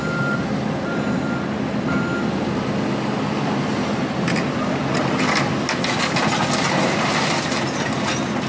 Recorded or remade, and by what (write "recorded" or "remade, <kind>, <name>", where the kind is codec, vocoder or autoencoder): recorded